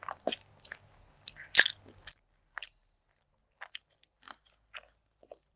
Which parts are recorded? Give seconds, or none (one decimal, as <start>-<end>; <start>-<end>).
0.0-5.6